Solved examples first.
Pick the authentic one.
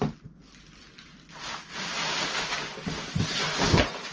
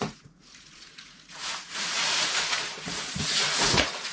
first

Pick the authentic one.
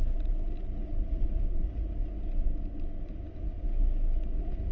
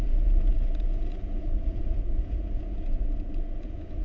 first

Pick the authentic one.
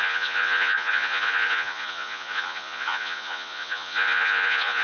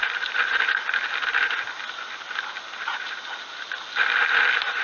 second